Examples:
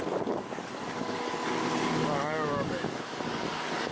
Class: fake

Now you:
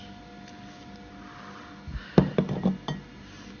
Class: real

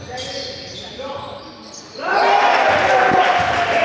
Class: real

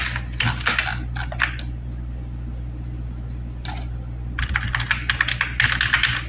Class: real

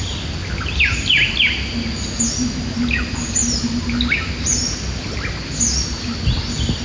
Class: real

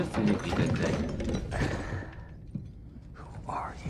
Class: real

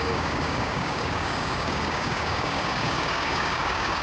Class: fake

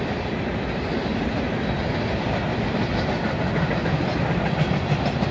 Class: real